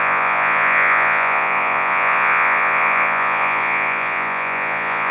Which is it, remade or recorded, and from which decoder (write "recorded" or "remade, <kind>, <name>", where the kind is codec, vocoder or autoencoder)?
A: remade, vocoder, Vocos